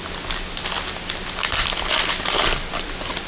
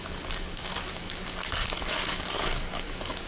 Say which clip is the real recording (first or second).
first